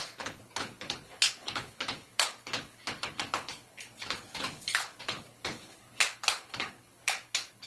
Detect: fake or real fake